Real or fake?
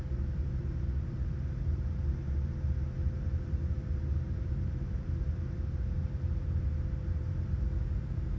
fake